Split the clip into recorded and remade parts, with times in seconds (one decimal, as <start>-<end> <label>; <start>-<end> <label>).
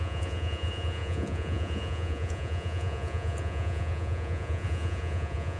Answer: 0.0-5.6 remade